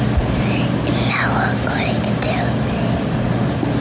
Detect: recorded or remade recorded